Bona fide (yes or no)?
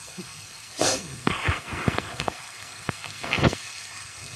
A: no